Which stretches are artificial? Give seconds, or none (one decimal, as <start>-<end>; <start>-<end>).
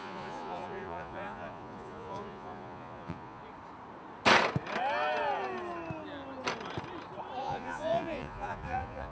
0.0-3.4; 7.4-9.1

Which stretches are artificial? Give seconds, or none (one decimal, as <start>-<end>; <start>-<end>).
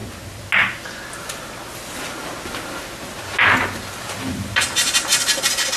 none